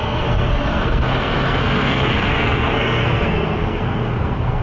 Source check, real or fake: fake